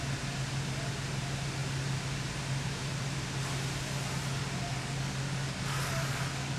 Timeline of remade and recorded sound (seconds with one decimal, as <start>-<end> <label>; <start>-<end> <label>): 0.0-4.8 recorded; 4.8-6.6 remade